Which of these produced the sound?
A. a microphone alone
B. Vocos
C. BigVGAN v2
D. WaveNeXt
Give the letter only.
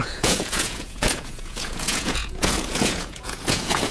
B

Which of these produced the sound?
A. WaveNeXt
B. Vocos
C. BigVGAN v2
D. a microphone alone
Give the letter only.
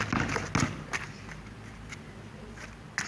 D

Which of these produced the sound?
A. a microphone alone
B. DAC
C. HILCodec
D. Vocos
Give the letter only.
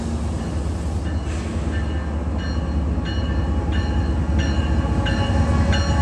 A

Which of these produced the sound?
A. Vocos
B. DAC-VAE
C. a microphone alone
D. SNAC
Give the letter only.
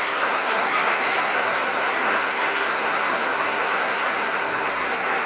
D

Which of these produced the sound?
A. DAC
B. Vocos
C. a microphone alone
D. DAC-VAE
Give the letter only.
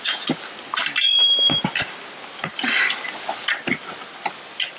C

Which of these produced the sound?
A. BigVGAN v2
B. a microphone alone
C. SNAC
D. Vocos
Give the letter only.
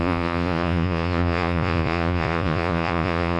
D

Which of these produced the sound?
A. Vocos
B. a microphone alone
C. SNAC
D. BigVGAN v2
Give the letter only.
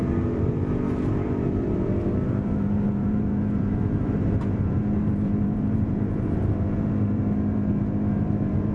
D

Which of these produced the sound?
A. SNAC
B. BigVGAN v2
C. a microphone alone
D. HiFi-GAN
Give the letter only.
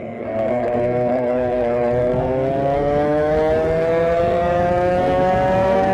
A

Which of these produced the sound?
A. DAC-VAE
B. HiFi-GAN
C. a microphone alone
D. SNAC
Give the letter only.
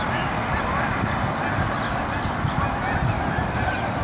C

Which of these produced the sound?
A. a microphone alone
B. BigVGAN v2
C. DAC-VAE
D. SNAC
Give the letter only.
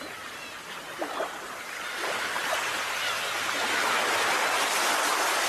A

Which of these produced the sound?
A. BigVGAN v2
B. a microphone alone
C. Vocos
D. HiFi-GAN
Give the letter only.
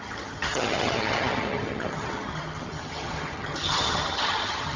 D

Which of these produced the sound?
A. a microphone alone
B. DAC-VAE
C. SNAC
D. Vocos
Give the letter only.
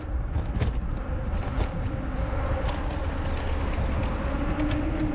A